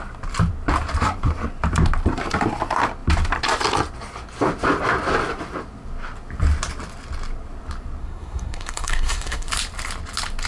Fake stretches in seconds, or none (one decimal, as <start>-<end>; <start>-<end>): 8.0-9.5